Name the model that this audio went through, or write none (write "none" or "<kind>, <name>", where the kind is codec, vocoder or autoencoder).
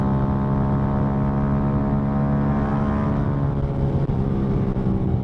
none